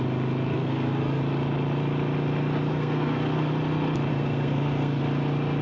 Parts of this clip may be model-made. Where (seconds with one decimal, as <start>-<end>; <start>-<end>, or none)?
0.5-1.2; 2.7-3.5; 4.1-5.0